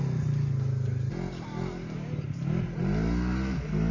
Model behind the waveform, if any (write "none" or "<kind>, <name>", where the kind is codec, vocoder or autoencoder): none